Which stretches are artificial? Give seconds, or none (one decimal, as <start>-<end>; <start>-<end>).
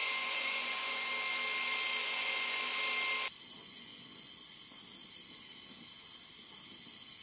0.0-1.1; 2.0-2.6; 3.6-4.5